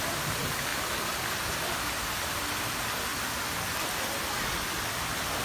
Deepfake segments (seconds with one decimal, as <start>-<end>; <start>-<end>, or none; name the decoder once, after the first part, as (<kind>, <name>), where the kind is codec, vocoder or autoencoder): none